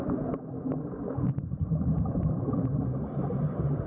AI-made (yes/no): no